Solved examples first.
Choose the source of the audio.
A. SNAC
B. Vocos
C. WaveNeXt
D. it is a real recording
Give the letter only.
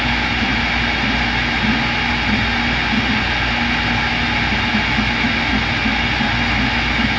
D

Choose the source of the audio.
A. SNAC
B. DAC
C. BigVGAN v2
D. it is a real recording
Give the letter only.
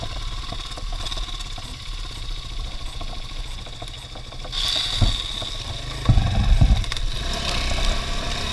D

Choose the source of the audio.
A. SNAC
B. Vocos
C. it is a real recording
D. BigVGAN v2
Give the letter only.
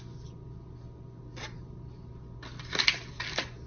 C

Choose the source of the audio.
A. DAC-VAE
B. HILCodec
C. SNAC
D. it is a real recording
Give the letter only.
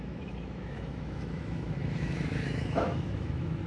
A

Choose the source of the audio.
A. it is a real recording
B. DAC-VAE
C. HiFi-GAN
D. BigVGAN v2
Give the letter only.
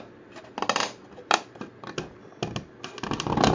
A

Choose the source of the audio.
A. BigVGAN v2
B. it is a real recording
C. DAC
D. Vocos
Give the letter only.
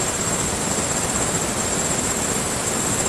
B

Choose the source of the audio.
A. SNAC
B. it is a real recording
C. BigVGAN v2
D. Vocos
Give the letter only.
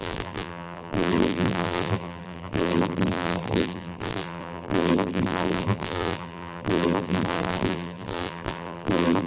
C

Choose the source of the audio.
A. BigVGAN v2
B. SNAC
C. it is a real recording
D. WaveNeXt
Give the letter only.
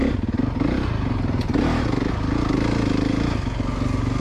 C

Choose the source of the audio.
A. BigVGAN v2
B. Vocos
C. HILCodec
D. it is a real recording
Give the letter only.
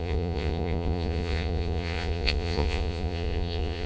B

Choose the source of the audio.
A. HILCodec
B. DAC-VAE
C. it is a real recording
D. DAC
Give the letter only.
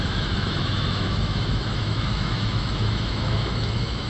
B